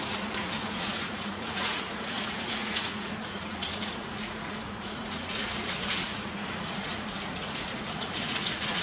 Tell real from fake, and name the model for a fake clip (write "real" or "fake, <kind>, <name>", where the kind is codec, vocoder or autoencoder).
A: fake, vocoder, Vocos